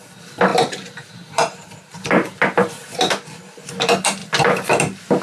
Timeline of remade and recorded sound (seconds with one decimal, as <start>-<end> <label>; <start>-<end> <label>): 0.0-5.2 remade